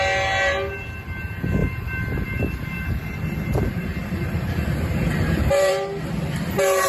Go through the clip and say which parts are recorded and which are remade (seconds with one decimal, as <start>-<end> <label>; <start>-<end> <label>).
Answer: 0.0-1.6 recorded; 1.6-5.7 remade; 5.7-6.9 recorded